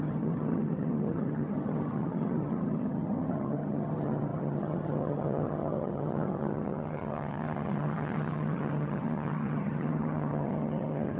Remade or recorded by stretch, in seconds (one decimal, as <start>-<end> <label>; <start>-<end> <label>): 0.0-11.2 remade